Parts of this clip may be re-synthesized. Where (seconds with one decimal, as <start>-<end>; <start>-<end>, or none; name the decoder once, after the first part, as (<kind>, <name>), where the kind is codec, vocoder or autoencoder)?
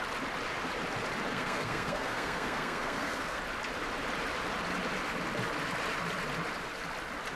1.3-3.4 (codec, SNAC)